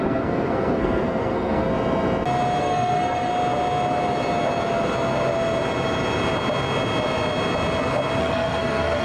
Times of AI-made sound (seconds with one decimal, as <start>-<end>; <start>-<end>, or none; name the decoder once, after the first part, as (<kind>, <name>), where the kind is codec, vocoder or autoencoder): 0.0-1.7 (codec, SNAC); 2.6-3.3; 8.2-9.0